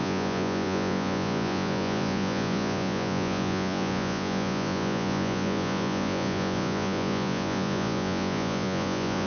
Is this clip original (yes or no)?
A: no